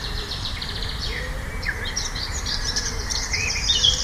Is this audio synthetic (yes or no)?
yes